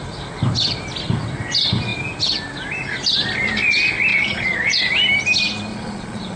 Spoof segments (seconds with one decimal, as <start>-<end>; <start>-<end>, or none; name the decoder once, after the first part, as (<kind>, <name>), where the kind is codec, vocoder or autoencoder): 4.1-4.8 (vocoder, Vocos); 5.7-6.4